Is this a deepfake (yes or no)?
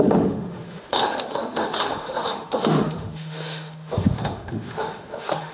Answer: yes